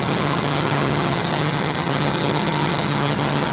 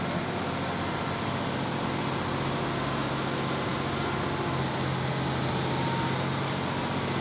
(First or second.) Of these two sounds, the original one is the second